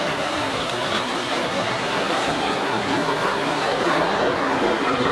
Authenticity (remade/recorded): remade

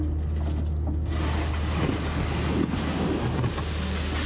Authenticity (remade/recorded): recorded